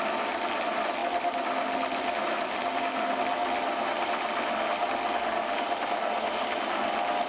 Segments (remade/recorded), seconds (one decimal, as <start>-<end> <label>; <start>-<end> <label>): 0.0-7.3 recorded